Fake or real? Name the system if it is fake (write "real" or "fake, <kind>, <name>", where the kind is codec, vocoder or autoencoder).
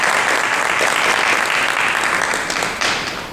real